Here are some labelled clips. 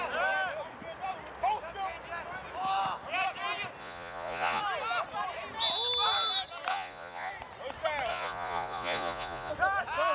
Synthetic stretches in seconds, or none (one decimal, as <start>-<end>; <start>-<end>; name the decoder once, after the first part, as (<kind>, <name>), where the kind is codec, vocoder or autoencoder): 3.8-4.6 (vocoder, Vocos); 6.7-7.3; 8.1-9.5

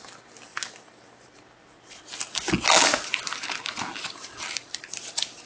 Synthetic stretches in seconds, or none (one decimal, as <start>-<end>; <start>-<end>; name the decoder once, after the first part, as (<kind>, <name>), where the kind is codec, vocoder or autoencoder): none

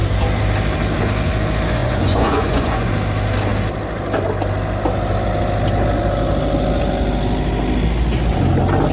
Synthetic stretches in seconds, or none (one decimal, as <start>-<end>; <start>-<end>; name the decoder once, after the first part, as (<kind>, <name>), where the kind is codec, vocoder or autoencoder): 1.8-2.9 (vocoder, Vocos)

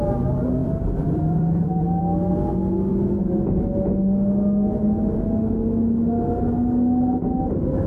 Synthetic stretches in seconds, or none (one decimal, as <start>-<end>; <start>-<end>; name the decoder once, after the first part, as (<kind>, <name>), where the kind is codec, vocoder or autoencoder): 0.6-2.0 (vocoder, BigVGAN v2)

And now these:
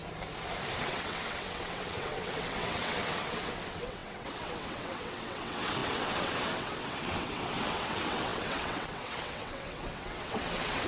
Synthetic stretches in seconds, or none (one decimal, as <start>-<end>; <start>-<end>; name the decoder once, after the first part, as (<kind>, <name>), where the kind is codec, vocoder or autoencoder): 0.8-10.9 (vocoder, WaveNeXt)

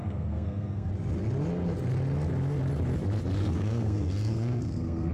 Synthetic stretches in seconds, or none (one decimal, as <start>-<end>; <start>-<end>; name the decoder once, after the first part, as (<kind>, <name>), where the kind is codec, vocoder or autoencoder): 0.0-0.9 (codec, SNAC); 3.4-5.1